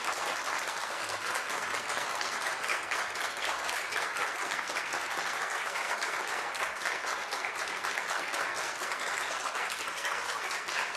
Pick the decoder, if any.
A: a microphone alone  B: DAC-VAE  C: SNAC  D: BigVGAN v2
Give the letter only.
C